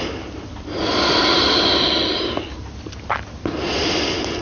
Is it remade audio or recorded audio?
recorded